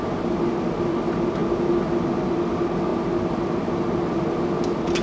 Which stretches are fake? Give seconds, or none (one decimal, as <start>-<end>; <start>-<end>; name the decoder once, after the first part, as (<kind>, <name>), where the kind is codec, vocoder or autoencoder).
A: none